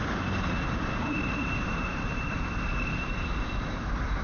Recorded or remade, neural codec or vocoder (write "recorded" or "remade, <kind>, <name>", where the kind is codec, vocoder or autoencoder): remade, vocoder, BigVGAN v2